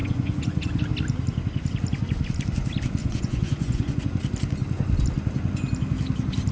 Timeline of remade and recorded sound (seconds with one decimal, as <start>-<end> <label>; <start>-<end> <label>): 0.0-0.8 remade; 0.8-3.0 recorded; 3.0-4.0 remade; 4.0-6.5 recorded